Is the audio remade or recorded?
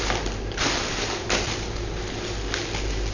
recorded